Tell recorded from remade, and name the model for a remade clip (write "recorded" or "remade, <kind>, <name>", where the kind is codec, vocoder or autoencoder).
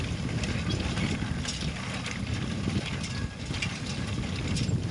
recorded